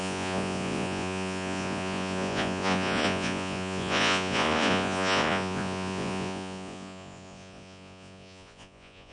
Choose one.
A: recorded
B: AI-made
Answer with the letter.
B